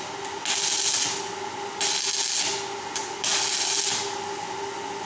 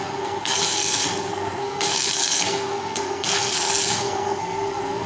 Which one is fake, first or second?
second